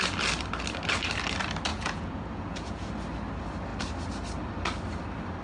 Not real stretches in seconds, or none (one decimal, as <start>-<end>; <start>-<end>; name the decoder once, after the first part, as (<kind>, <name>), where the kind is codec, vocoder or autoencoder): 1.7-2.9 (vocoder, Vocos)

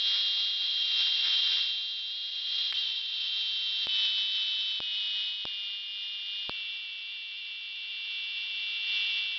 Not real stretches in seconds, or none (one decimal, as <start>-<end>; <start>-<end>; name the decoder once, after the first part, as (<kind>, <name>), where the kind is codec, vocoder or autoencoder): 0.6-1.7 (vocoder, Vocos); 2.3-3.3

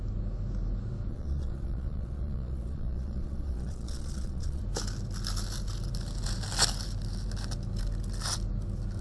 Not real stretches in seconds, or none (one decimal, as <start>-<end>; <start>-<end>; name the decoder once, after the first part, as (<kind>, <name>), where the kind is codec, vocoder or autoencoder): 1.1-4.6 (vocoder, Vocos)

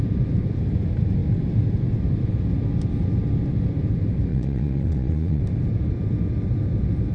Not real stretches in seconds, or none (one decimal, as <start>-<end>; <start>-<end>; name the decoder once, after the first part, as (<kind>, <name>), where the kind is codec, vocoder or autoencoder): 4.3-5.4 (vocoder, Vocos)

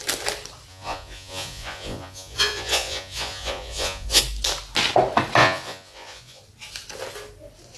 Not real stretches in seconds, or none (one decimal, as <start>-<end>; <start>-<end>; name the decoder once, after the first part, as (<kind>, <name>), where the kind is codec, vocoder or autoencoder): 0.7-4.2 (vocoder, Vocos); 5.4-6.4

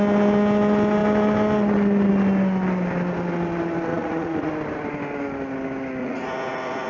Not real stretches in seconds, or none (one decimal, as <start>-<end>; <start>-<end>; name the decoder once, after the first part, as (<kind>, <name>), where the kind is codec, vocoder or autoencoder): 3.9-4.5 (vocoder, Vocos); 6.0-6.9

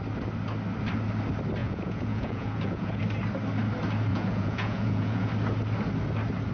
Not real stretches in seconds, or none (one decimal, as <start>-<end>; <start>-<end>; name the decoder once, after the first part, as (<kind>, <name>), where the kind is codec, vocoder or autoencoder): 1.6-3.0 (vocoder, Vocos); 4.1-5.3

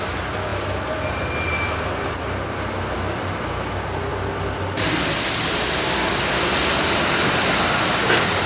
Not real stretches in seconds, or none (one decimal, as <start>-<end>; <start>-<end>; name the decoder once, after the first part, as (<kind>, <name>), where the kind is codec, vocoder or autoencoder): none